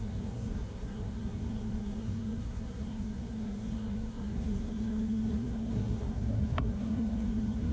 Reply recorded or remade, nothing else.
remade